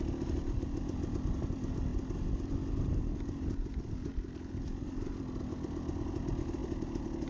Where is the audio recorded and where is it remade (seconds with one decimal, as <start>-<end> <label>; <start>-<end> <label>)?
0.0-1.9 recorded; 1.9-5.2 remade; 5.2-6.6 recorded; 6.6-7.3 remade